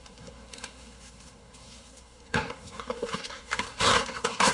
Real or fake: fake